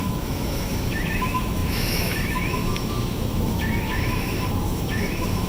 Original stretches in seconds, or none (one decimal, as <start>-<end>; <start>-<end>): none